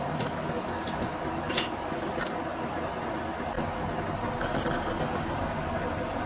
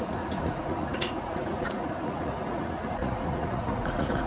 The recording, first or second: first